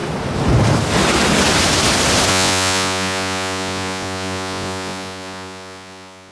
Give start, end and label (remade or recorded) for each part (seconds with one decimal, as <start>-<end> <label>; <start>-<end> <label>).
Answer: 0.0-2.3 recorded; 2.3-6.3 remade

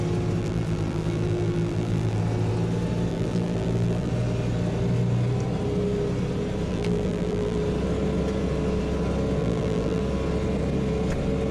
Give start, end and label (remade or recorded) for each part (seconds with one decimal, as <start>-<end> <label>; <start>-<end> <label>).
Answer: 0.0-0.4 recorded; 0.4-2.2 remade; 2.2-3.1 recorded; 3.1-4.1 remade; 4.1-6.7 recorded; 6.7-7.6 remade; 7.6-9.4 recorded; 9.4-10.0 remade; 10.0-11.5 recorded

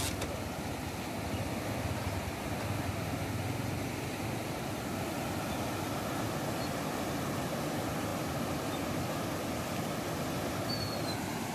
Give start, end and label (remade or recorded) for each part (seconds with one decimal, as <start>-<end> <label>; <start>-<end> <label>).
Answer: 0.0-11.5 recorded

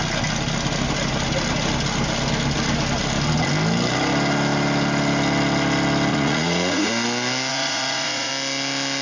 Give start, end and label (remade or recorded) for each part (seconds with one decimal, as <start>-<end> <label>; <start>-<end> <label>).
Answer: 0.0-6.1 recorded; 6.1-6.9 remade; 6.9-7.5 recorded; 7.5-8.3 remade; 8.3-9.0 recorded

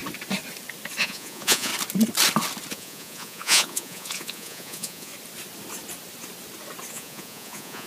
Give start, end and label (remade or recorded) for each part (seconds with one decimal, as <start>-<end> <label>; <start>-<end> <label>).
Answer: 0.0-1.0 recorded; 1.0-1.7 remade; 1.7-2.7 recorded; 2.7-5.1 remade; 5.1-6.9 recorded; 6.9-7.9 remade

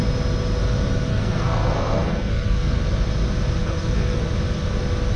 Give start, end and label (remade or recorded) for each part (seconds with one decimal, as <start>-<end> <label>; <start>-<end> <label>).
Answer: 0.0-1.1 recorded; 1.1-2.8 remade; 2.8-3.6 recorded; 3.6-4.2 remade; 4.2-5.2 recorded